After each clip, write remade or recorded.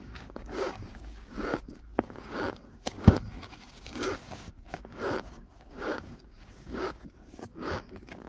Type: remade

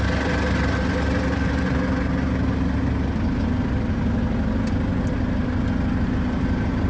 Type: recorded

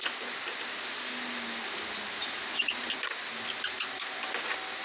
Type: recorded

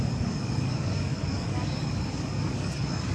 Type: remade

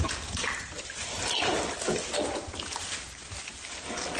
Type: recorded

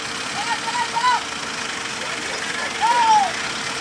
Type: recorded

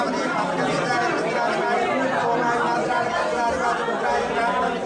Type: recorded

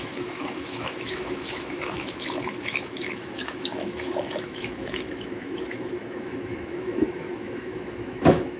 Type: remade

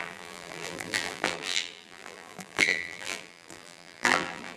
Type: remade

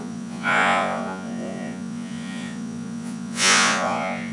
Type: remade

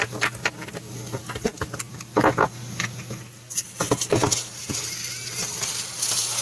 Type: recorded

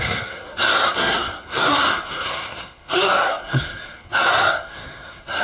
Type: remade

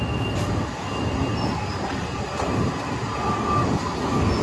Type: recorded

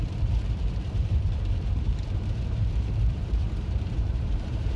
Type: remade